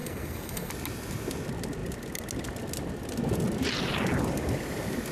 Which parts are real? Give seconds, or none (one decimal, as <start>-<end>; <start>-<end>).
0.7-5.1